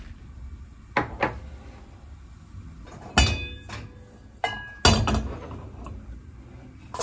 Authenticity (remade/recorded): recorded